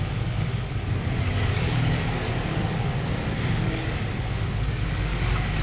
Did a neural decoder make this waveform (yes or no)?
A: yes